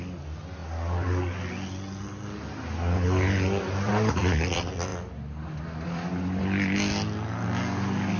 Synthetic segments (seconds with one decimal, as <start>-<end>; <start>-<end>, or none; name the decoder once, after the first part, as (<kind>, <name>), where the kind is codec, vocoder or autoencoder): none